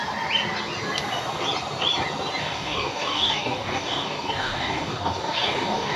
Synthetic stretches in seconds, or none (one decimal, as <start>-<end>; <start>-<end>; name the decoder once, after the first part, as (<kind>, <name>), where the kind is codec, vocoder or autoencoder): 2.4-6.0 (codec, DAC)